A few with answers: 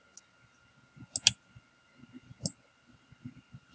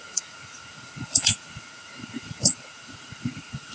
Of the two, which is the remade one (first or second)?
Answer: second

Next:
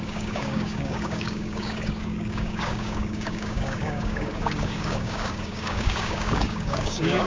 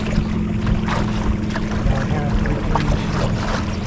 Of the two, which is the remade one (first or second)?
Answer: first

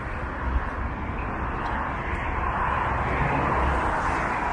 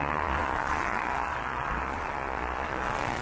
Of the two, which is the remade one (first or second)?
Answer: second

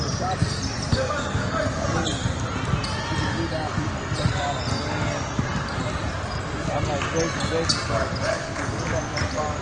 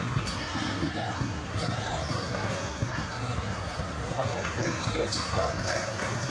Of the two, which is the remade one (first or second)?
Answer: second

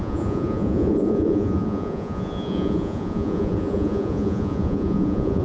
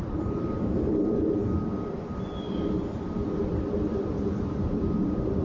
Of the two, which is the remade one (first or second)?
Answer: first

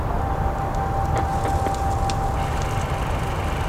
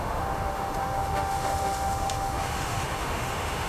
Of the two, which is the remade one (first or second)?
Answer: second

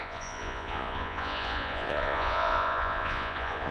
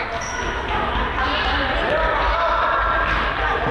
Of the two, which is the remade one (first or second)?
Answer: first